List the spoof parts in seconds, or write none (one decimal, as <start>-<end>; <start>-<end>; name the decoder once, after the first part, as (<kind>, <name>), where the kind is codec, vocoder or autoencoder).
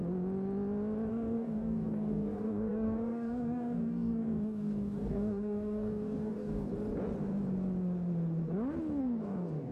1.1-6.7 (codec, DAC); 9.0-9.7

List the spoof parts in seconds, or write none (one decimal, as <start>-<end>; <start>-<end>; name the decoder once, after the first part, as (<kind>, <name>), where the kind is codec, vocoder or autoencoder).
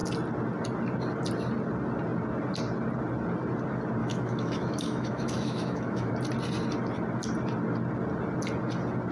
4.0-6.1 (autoencoder, DAC-VAE)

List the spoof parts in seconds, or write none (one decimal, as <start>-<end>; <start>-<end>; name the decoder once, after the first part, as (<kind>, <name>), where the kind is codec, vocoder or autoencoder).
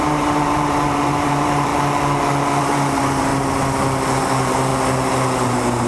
0.0-1.7 (vocoder, BigVGAN v2); 2.6-3.3; 4.2-4.7; 5.5-5.9